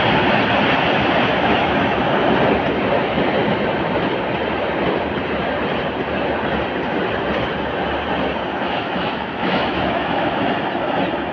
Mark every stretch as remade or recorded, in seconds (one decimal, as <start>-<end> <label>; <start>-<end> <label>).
0.0-8.5 recorded; 8.5-10.5 remade; 10.5-11.3 recorded

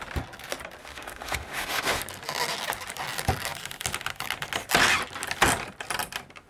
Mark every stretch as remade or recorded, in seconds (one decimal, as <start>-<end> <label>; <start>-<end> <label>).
0.0-0.8 recorded; 0.8-2.0 remade; 2.0-6.5 recorded

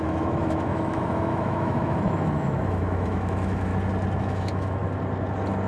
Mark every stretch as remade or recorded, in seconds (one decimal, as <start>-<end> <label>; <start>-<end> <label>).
0.0-3.7 remade; 3.7-4.2 recorded; 4.2-4.8 remade; 4.8-5.7 recorded

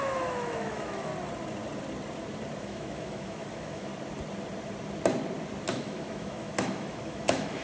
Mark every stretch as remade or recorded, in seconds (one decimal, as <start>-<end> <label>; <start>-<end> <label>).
0.0-1.1 remade; 1.1-2.6 recorded; 2.6-3.9 remade; 3.9-5.7 recorded; 5.7-7.6 remade

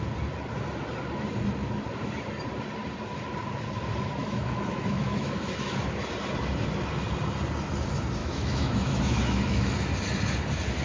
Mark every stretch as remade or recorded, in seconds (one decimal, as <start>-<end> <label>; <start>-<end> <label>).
0.0-4.2 recorded; 4.2-5.8 remade; 5.8-8.2 recorded; 8.2-9.7 remade; 9.7-10.8 recorded

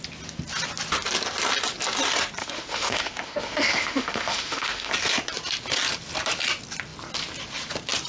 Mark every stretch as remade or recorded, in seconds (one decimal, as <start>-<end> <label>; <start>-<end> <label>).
0.0-2.4 recorded; 2.4-4.9 remade; 4.9-8.1 recorded

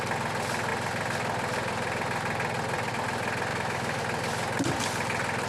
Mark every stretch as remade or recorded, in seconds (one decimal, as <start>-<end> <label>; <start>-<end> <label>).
0.0-3.5 recorded; 3.5-4.0 remade; 4.0-5.5 recorded